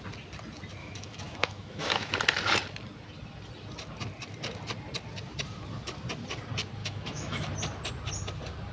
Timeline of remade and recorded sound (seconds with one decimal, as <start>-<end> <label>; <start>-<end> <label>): 0.0-0.8 recorded; 0.8-2.1 remade; 2.1-6.8 recorded; 6.8-7.5 remade; 7.5-8.7 recorded